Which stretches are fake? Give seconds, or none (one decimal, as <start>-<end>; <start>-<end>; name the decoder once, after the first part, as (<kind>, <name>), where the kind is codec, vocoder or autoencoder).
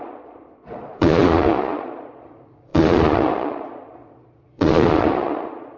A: 0.0-5.8 (vocoder, Vocos)